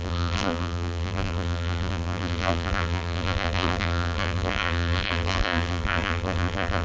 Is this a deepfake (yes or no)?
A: yes